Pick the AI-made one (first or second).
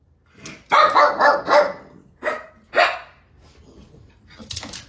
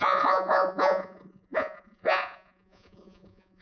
second